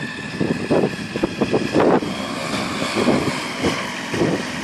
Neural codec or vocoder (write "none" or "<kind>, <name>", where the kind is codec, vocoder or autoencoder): none